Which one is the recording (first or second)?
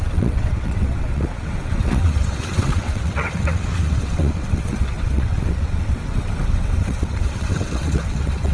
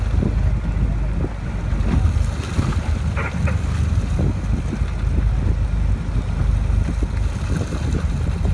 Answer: second